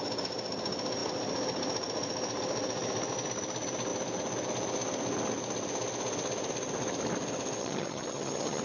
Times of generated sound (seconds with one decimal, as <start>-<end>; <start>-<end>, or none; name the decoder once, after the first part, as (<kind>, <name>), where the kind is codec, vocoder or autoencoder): 7.6-8.6 (vocoder, HiFi-GAN)

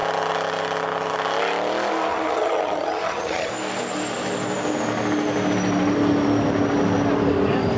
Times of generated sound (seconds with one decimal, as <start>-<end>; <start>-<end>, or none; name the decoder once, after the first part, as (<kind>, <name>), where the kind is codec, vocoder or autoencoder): 2.1-3.5 (vocoder, HiFi-GAN)

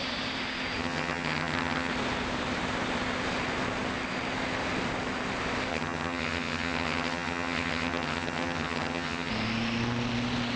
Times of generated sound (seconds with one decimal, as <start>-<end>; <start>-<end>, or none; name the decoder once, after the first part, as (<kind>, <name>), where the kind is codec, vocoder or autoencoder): 0.8-1.9 (vocoder, HiFi-GAN); 5.7-9.3

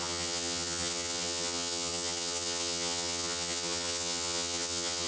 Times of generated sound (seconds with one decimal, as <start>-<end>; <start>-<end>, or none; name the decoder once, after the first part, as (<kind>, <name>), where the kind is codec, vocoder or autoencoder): 0.0-5.1 (vocoder, HiFi-GAN)

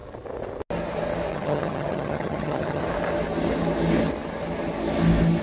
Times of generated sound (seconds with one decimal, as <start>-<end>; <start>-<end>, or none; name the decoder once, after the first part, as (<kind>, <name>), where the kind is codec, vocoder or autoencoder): 1.3-2.8 (vocoder, HiFi-GAN)

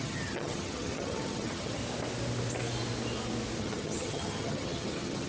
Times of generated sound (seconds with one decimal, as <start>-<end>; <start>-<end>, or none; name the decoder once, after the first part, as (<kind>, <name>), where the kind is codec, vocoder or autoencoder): 0.0-1.8 (vocoder, HiFi-GAN); 3.6-5.3

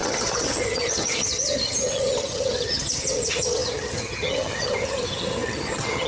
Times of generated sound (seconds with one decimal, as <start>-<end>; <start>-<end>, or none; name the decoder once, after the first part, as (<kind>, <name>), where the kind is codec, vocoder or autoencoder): 0.0-6.1 (vocoder, HiFi-GAN)

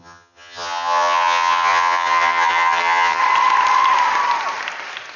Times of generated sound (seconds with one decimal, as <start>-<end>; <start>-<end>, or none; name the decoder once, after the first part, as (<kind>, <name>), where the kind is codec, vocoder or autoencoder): 0.0-3.2 (vocoder, HiFi-GAN)